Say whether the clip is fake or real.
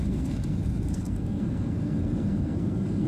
fake